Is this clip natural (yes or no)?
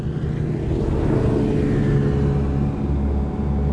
yes